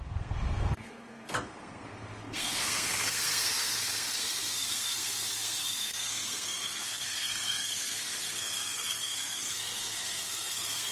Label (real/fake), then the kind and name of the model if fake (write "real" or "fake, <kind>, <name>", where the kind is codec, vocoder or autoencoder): fake, codec, SNAC